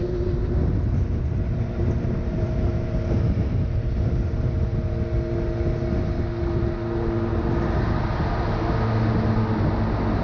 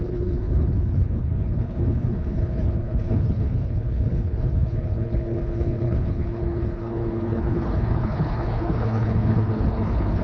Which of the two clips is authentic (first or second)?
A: first